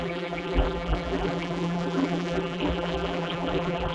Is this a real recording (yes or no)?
no